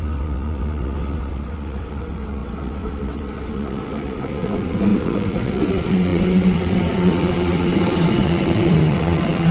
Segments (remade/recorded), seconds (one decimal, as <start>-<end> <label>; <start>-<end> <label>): 0.0-9.5 remade